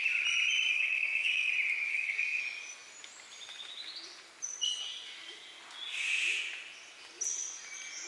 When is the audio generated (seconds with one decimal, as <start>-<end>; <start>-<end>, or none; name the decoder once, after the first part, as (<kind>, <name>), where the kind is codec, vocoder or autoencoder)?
0.7-1.5 (codec, SNAC); 1.9-2.4